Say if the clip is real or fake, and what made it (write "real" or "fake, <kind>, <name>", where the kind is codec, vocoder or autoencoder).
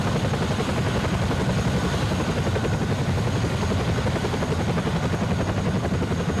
real